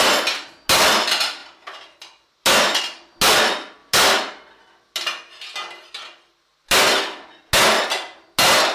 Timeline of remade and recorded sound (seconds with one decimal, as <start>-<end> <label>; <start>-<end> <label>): 0.0-8.7 recorded